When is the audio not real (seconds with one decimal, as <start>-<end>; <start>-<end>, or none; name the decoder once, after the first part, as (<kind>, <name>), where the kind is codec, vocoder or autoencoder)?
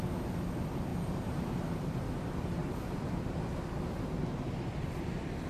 0.9-1.9 (vocoder, BigVGAN v2); 2.6-3.3